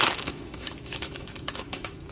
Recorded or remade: remade